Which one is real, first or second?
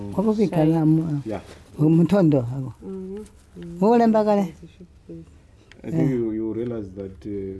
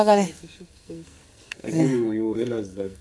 first